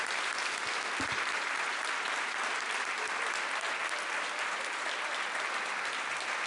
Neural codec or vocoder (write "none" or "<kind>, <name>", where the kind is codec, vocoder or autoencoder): none